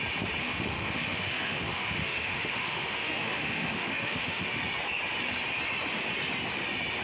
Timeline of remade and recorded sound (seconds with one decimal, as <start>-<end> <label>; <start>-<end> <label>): 0.0-0.4 recorded; 0.4-4.6 remade; 4.6-7.0 recorded